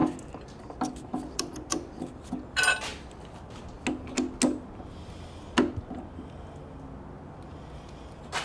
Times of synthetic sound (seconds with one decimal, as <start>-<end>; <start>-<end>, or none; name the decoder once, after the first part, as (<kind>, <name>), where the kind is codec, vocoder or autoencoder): none